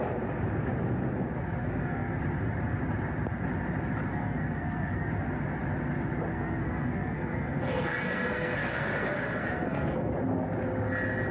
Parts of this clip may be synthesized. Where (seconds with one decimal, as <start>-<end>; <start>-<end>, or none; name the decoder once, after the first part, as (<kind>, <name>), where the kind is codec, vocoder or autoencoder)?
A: 1.6-2.2 (codec, SNAC); 4.1-5.1; 6.3-10.1